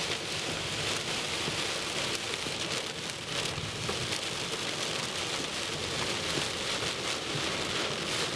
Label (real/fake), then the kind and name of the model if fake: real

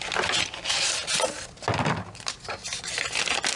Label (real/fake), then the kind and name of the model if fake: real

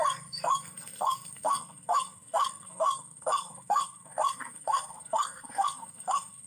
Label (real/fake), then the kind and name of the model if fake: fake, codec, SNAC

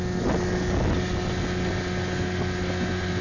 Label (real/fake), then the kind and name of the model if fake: real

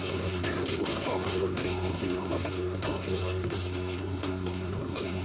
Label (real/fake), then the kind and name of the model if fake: fake, codec, SNAC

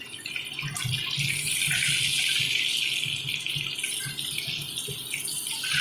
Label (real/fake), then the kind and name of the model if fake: real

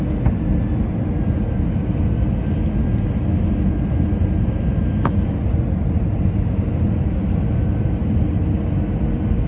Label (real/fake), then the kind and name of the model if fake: real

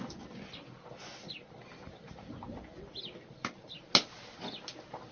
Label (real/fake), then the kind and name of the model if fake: real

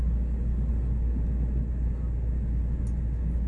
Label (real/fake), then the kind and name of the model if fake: real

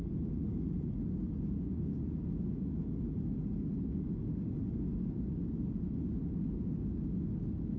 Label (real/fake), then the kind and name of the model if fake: real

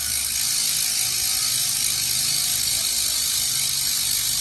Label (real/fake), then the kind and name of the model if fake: real